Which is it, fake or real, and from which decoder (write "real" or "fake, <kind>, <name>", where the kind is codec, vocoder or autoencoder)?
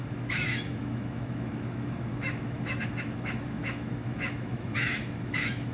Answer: fake, autoencoder, DAC-VAE